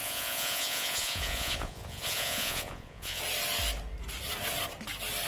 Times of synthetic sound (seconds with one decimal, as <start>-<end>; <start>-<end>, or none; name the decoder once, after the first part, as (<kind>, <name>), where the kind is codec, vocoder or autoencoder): 0.0-3.2 (vocoder, Vocos)